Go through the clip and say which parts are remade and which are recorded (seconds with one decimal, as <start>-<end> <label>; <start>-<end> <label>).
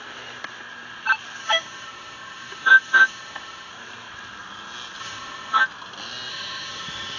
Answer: 0.0-1.4 recorded; 1.4-3.7 remade; 3.7-5.0 recorded; 5.0-5.6 remade; 5.6-6.3 recorded; 6.3-7.2 remade